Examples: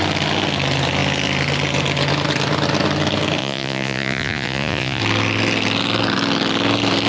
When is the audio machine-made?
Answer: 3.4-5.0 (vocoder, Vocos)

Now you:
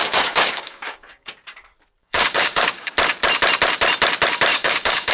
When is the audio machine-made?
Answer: 0.0-1.3 (codec, DAC); 2.0-2.9; 4.5-5.1

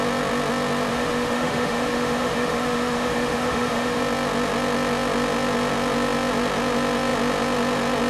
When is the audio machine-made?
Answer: 0.9-4.0 (autoencoder, DAC-VAE)

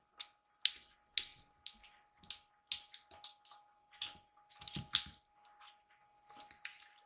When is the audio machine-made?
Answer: none